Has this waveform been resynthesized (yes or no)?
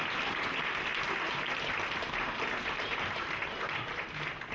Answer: no